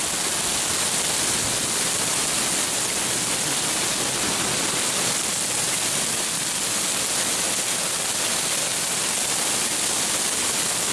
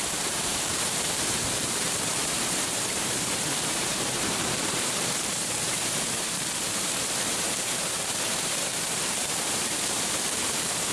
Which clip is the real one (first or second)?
first